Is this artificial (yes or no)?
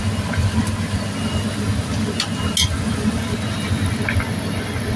no